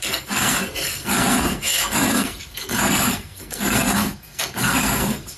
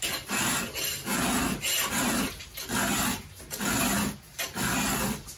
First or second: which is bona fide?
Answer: second